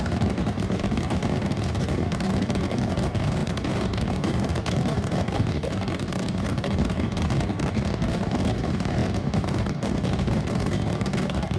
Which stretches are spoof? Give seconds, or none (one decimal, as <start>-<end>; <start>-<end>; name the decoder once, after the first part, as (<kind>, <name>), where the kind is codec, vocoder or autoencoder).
0.0-11.6 (codec, DAC)